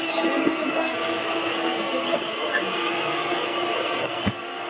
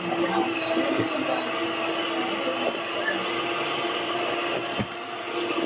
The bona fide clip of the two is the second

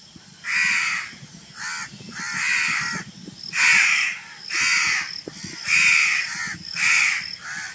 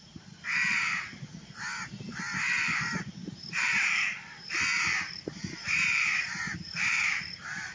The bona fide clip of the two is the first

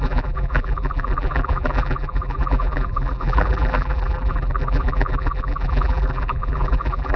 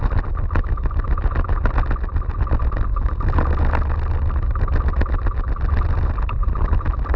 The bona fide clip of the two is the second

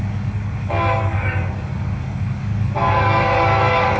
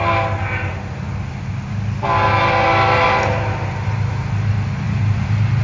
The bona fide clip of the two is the second